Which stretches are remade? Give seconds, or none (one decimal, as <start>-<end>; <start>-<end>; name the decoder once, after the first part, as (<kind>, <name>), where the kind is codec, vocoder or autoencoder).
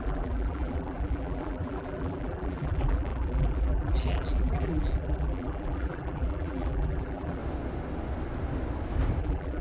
0.0-7.4 (vocoder, BigVGAN v2); 9.2-9.6